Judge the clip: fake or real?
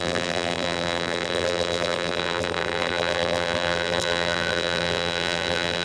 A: fake